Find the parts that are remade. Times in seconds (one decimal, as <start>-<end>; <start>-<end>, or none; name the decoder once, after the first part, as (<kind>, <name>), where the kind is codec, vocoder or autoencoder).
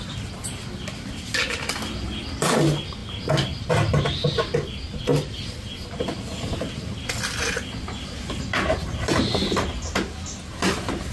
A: none